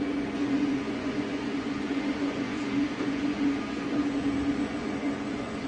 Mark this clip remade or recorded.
remade